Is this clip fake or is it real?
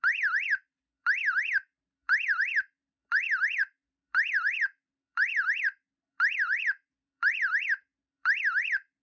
fake